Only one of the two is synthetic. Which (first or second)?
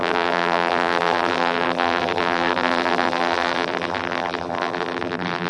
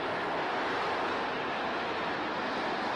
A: first